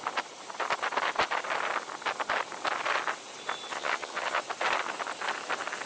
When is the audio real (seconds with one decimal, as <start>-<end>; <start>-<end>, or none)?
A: 0.0-3.7; 4.4-5.9